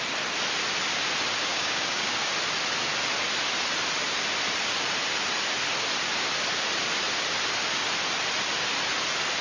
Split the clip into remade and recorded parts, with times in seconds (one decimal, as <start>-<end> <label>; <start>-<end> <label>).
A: 0.0-1.5 recorded; 1.5-2.3 remade; 2.3-9.4 recorded